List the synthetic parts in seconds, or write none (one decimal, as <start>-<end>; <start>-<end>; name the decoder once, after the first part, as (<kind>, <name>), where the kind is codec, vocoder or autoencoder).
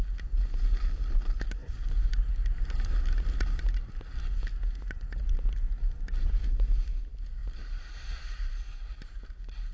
1.6-2.3 (vocoder, BigVGAN v2); 7.4-8.9